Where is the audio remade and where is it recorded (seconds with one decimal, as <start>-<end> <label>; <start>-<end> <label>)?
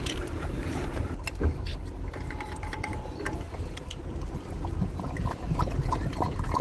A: 0.0-1.7 remade; 1.7-5.0 recorded; 5.0-6.6 remade